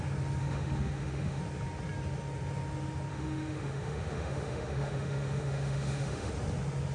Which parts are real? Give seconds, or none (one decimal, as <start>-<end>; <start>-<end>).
0.0-0.4; 1.4-3.1; 6.3-6.9